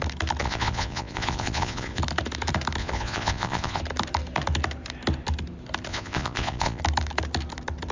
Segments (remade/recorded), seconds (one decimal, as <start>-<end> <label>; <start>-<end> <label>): 0.0-0.4 recorded; 0.4-2.0 remade; 2.0-2.8 recorded; 2.8-3.8 remade; 3.8-5.9 recorded; 5.9-6.8 remade; 6.8-7.9 recorded